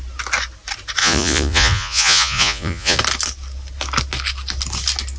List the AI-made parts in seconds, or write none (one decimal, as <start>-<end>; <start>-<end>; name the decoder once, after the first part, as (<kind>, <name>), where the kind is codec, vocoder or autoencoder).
1.0-3.0 (vocoder, Vocos)